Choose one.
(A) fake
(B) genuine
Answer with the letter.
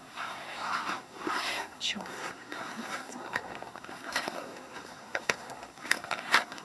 A